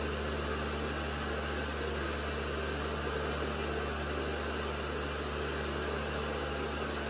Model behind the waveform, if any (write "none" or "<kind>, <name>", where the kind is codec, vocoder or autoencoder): none